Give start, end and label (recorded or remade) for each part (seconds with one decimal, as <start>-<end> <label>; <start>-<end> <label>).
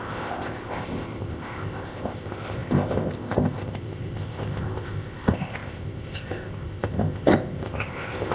0.0-8.3 remade